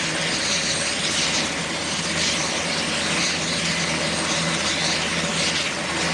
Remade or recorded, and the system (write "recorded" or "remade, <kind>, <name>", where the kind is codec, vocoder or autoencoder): recorded